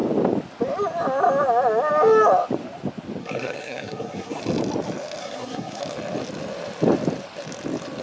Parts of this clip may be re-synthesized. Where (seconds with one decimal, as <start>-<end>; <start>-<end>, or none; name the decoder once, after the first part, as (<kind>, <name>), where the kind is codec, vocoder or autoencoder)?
3.2-4.4 (codec, SNAC); 5.2-5.8